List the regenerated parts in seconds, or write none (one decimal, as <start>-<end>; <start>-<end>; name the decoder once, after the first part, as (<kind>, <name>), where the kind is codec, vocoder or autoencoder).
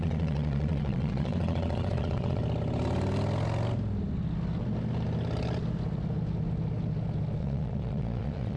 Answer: 0.0-2.4 (vocoder, Vocos); 7.4-8.6